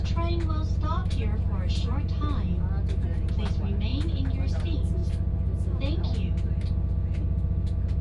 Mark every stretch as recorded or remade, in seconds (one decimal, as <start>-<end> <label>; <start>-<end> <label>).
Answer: 0.0-8.0 recorded